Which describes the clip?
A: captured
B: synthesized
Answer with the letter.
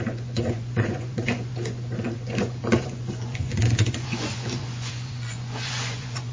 B